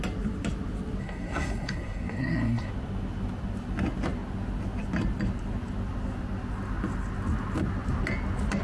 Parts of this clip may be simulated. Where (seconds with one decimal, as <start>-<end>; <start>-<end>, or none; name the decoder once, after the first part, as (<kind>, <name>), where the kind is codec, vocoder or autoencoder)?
1.0-2.7 (codec, SNAC)